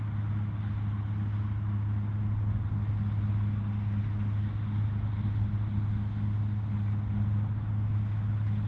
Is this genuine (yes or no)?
yes